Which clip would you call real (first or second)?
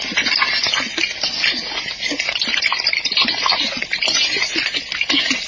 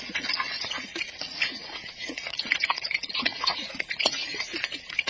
first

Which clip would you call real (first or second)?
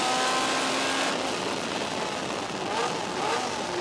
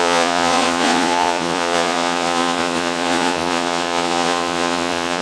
first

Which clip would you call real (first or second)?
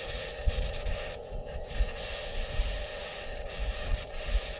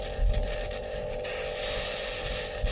second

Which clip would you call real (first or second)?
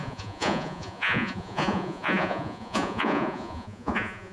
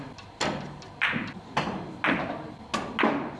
second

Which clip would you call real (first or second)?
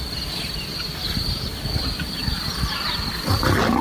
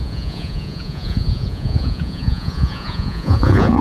first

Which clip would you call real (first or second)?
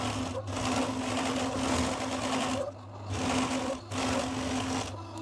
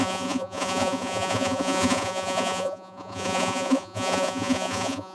first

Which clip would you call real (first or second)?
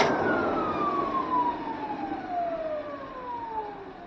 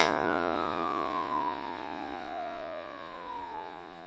first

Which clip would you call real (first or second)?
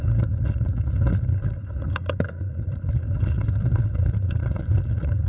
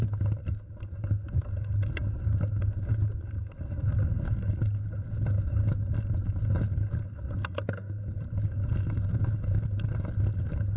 second